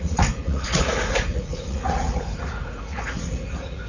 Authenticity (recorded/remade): remade